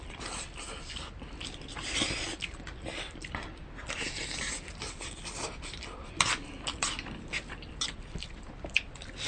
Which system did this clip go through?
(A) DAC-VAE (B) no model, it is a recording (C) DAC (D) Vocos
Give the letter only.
B